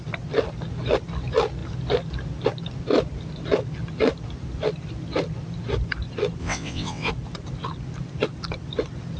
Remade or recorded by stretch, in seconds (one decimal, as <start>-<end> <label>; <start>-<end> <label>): 0.0-6.4 recorded; 6.4-7.1 remade; 7.1-9.2 recorded